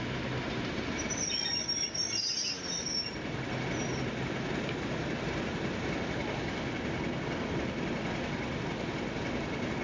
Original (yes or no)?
yes